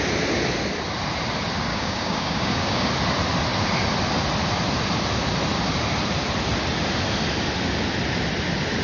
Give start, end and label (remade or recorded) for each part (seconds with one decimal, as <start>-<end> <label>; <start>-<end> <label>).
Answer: 0.0-1.7 recorded; 1.7-2.9 remade; 2.9-8.8 recorded